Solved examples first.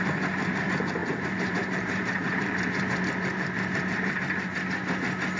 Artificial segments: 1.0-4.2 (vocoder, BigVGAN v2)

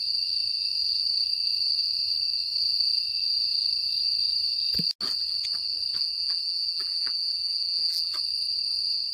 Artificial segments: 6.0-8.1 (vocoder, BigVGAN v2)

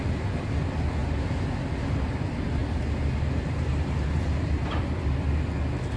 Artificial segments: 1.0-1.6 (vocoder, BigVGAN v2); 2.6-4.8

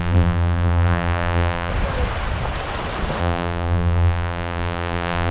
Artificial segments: 0.0-1.7 (vocoder, BigVGAN v2); 3.2-5.3

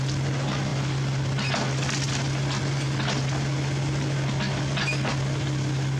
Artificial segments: none

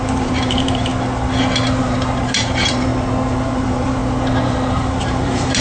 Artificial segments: 0.0-0.9 (vocoder, BigVGAN v2); 1.8-2.9; 3.4-4.0; 4.7-5.6

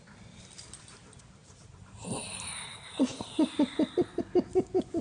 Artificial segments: 1.4-2.7 (vocoder, BigVGAN v2)